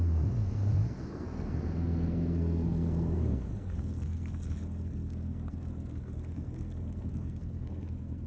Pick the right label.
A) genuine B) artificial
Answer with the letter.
B